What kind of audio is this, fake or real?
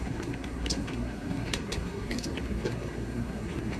fake